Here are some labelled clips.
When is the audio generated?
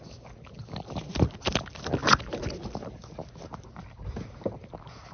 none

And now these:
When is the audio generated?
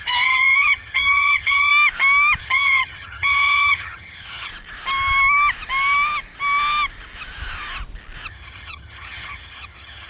0.0-1.7 (vocoder, HiFi-GAN); 2.4-4.5; 8.3-10.1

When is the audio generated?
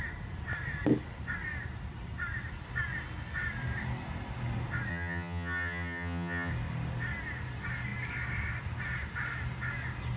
4.9-6.5 (vocoder, HiFi-GAN)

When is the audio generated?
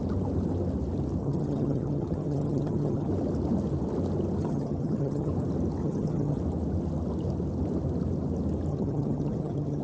1.2-3.1 (vocoder, HiFi-GAN); 4.4-5.3; 5.8-6.4; 8.7-9.8